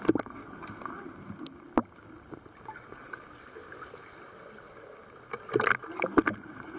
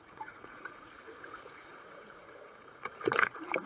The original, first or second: first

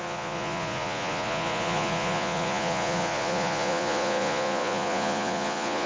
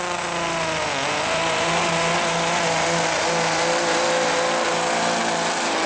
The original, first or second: second